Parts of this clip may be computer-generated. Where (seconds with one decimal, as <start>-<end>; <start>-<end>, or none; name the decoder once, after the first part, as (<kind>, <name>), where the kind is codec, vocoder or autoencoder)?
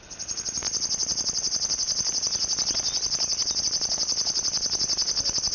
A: none